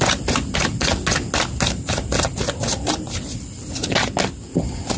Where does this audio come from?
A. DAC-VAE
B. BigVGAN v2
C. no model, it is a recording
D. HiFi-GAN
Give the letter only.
C